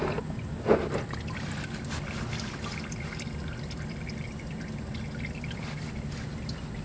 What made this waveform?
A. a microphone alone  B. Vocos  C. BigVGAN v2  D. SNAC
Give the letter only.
A